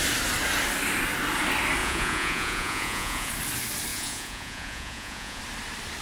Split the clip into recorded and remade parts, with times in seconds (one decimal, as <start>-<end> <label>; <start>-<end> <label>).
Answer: 0.0-1.8 recorded; 1.8-3.3 remade; 3.3-3.9 recorded; 3.9-5.4 remade; 5.4-6.0 recorded